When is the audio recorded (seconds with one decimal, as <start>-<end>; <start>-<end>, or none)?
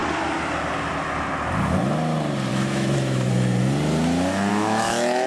0.0-2.5; 3.3-4.5